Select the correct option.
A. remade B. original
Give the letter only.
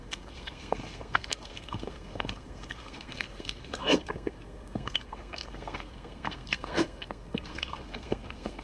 A